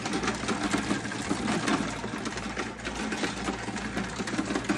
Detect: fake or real real